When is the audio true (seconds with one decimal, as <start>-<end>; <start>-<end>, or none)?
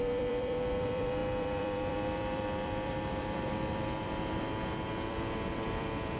4.5-5.1